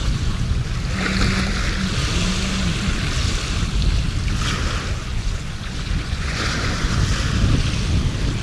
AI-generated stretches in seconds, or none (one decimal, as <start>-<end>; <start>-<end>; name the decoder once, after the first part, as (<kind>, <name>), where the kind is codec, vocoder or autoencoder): 0.0-0.7 (vocoder, Vocos); 5.0-7.0